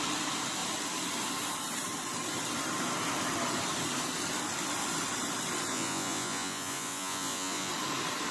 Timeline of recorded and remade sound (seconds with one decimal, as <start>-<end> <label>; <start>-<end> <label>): 0.0-5.7 recorded; 5.7-7.7 remade; 7.7-8.3 recorded